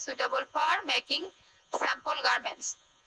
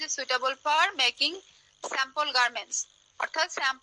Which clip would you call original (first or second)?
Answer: second